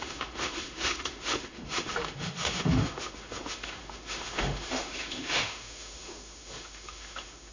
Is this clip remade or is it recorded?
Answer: remade